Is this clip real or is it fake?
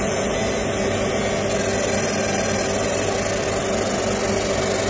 real